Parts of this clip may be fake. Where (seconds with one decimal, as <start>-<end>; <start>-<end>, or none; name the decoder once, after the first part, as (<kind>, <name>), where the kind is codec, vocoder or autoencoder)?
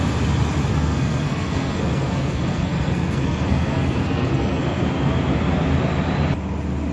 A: 0.7-4.8 (codec, SNAC)